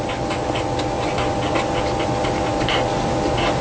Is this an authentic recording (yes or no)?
yes